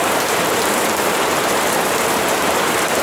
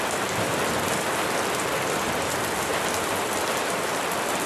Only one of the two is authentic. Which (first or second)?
second